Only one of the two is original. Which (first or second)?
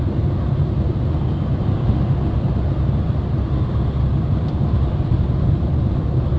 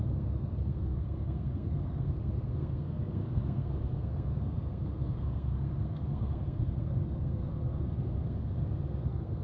first